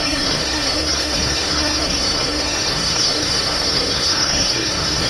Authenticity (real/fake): fake